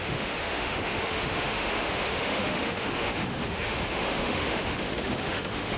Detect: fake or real fake